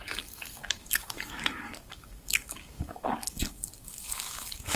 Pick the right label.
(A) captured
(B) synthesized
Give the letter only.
B